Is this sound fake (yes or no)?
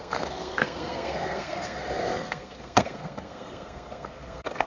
yes